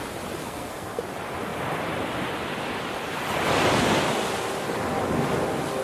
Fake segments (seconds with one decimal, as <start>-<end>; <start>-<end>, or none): 0.4-1.0